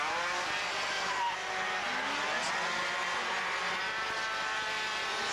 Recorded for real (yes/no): yes